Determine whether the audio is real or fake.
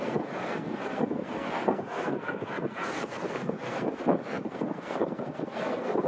fake